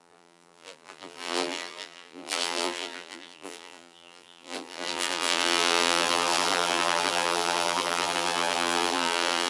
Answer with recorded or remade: remade